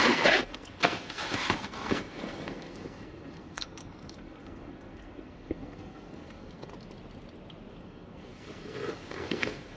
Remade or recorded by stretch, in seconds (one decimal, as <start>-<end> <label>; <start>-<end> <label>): 0.0-6.7 remade; 6.7-7.7 recorded; 7.7-9.8 remade